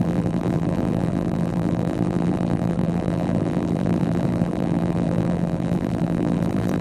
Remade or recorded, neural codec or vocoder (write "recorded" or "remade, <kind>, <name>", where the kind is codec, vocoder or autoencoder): remade, vocoder, BigVGAN v2